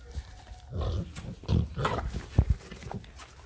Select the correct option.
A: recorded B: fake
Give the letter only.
A